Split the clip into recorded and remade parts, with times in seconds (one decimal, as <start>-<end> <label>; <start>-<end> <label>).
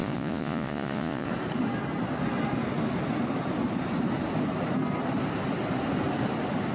0.0-1.3 remade; 1.3-6.7 recorded